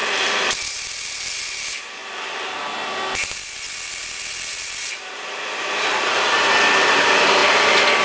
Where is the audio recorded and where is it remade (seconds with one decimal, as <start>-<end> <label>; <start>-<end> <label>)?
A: 0.0-1.2 recorded; 1.2-2.0 remade; 2.0-6.8 recorded; 6.8-7.4 remade; 7.4-8.0 recorded